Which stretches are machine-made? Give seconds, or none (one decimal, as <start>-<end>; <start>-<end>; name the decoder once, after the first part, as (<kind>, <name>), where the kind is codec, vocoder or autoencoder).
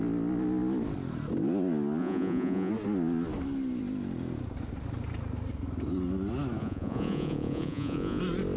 2.0-2.7 (vocoder, Vocos); 6.6-8.2